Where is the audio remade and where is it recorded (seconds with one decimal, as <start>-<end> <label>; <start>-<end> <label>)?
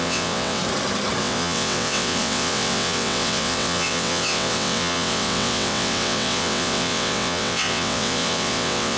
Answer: 0.0-0.6 remade; 0.6-1.2 recorded; 1.2-9.0 remade